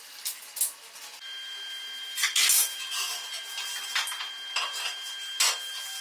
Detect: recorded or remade recorded